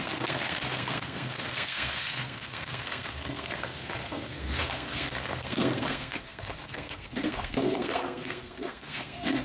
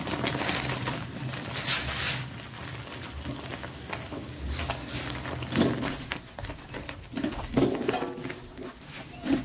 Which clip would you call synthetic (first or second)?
first